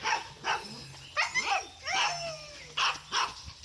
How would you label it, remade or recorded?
recorded